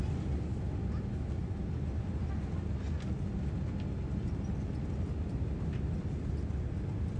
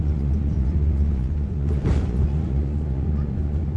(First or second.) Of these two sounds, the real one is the first